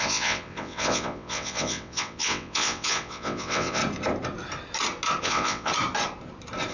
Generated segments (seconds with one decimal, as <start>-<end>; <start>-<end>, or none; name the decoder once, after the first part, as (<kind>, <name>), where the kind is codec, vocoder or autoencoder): 0.0-3.8 (vocoder, WaveNeXt); 5.2-5.7